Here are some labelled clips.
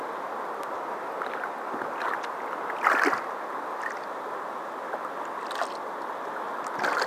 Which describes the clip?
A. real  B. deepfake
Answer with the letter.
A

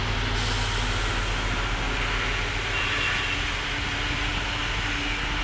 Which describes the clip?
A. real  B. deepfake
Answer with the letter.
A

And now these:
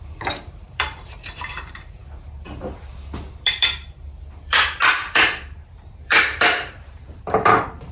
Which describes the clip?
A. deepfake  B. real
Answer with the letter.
A